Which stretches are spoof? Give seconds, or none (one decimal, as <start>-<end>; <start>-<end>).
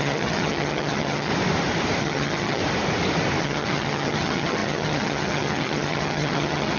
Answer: 0.0-1.3; 2.0-2.6; 3.4-6.8